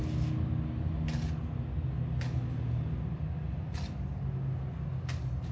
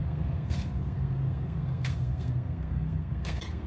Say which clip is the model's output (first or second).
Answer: second